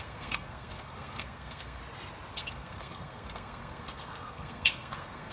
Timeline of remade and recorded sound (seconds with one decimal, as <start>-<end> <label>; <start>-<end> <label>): 0.0-1.8 remade; 1.8-2.3 recorded; 2.3-5.3 remade